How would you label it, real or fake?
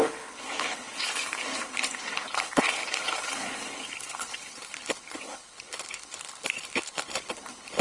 fake